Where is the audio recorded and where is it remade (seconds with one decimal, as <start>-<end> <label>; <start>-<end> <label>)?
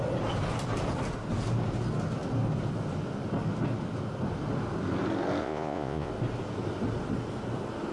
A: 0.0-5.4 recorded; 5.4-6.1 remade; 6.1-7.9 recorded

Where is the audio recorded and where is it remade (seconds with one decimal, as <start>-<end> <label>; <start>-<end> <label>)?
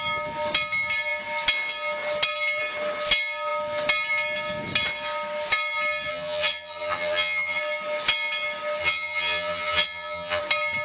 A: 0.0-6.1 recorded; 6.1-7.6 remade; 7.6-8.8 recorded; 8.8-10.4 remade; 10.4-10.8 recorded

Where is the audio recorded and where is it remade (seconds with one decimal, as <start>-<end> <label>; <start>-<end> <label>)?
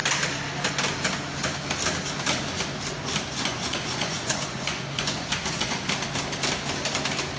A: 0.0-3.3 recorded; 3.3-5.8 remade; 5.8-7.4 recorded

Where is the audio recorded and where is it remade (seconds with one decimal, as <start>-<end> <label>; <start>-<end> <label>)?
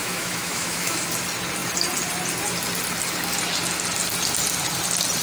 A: 0.0-1.1 remade; 1.1-5.2 recorded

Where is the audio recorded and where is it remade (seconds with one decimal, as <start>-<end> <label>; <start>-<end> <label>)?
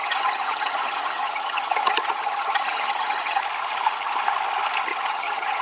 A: 0.0-3.4 remade; 3.4-4.9 recorded; 4.9-5.6 remade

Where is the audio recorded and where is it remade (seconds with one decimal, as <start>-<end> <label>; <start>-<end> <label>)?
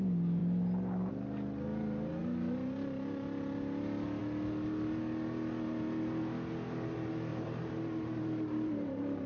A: 0.0-7.3 recorded; 7.3-9.3 remade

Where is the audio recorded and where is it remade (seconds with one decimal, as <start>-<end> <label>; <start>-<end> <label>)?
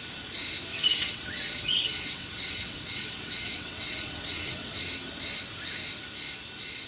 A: 0.0-0.7 recorded; 0.7-4.8 remade; 4.8-6.9 recorded